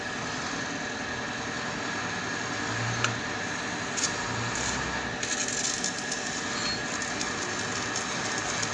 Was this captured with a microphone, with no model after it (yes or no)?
yes